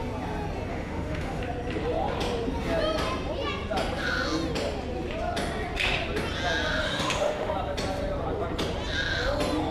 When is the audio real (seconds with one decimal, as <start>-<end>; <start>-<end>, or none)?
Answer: 0.0-0.7; 1.4-6.8; 7.5-9.7